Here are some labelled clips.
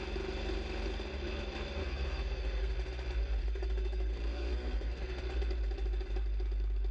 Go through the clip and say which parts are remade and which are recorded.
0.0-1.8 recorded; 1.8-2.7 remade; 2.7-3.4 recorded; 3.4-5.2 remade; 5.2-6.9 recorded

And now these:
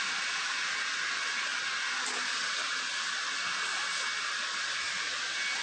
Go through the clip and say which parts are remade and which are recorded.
0.0-5.6 recorded